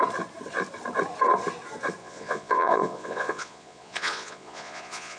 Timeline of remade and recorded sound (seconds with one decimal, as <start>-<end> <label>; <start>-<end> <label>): 0.0-2.0 recorded; 2.0-5.2 remade